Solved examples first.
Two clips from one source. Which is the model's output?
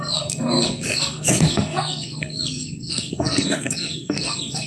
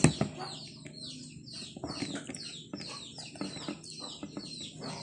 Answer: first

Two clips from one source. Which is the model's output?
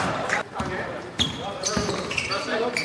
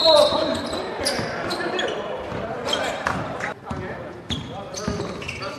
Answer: first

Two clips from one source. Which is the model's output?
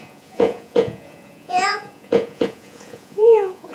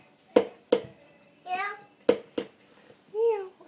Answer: first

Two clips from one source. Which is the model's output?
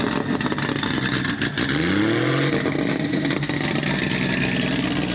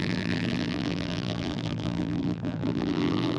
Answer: second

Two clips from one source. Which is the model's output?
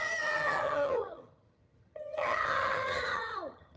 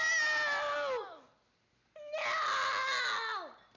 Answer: first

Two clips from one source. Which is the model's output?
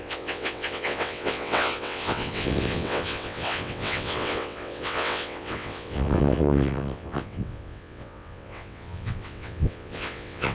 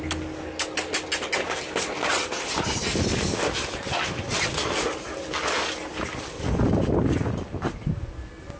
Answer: first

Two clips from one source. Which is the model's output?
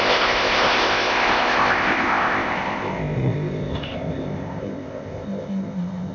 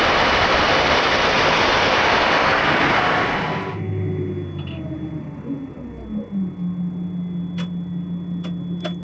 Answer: first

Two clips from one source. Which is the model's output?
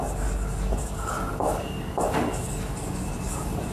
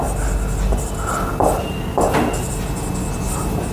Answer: first